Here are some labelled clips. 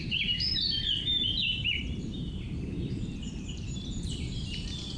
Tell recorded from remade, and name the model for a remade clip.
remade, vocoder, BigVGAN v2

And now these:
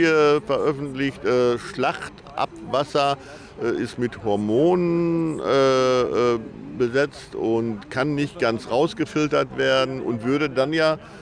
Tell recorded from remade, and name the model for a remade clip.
recorded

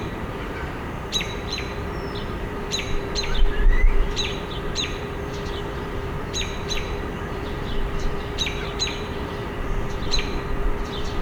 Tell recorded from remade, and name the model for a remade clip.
remade, vocoder, BigVGAN v2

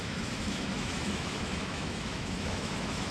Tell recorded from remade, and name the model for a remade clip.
remade, autoencoder, DAC-VAE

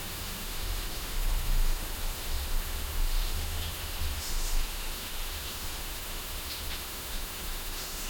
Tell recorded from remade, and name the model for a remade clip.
remade, autoencoder, DAC-VAE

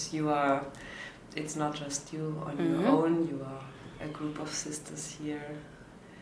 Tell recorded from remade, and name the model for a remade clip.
recorded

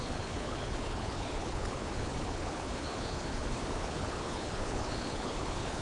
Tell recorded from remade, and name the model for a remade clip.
remade, codec, HILCodec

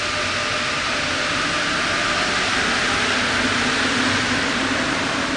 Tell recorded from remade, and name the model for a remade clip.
recorded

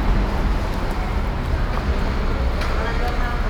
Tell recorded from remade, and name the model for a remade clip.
recorded